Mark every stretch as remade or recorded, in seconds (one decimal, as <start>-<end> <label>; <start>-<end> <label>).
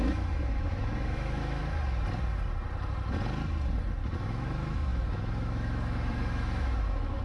0.0-1.6 remade; 1.6-4.2 recorded; 4.2-7.2 remade